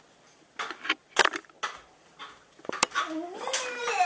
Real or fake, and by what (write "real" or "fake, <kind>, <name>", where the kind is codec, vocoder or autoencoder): real